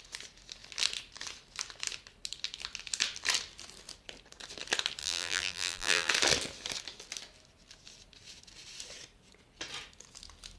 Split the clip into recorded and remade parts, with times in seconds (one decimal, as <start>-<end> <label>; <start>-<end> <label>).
0.0-5.0 recorded; 5.0-6.1 remade; 6.1-10.6 recorded

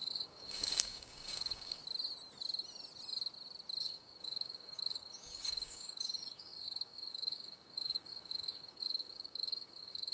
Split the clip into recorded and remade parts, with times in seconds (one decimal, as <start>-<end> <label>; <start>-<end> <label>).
0.0-1.8 remade; 1.8-3.8 recorded; 3.8-10.1 remade

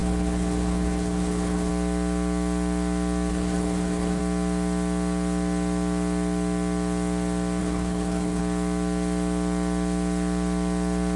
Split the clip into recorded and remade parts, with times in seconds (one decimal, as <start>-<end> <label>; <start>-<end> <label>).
0.0-1.7 remade; 1.7-3.3 recorded; 3.3-4.2 remade; 4.2-7.6 recorded; 7.6-8.4 remade; 8.4-11.2 recorded

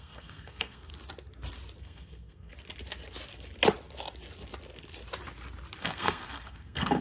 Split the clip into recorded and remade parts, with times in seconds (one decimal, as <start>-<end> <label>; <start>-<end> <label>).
0.0-0.9 remade; 0.9-1.8 recorded; 1.8-2.5 remade; 2.5-5.8 recorded; 5.8-7.0 remade

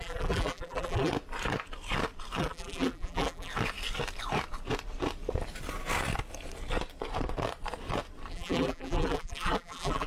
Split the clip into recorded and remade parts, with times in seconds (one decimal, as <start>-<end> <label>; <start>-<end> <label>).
0.0-1.1 remade; 1.1-2.4 recorded; 2.4-3.5 remade; 3.5-8.3 recorded; 8.3-10.1 remade

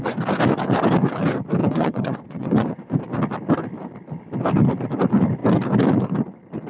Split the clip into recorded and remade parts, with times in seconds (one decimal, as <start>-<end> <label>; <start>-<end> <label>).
0.0-1.6 recorded; 1.6-3.0 remade; 3.0-6.7 recorded

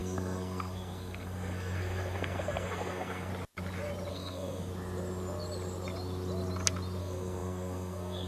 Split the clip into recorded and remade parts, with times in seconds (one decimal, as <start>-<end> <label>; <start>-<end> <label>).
0.0-3.3 remade; 3.3-4.1 recorded; 4.1-4.7 remade; 4.7-7.0 recorded; 7.0-8.3 remade

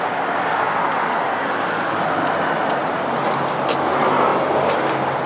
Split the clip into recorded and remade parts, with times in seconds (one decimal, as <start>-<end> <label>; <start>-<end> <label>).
0.0-5.3 recorded